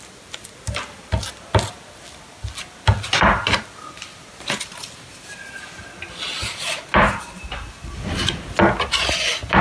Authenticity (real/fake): real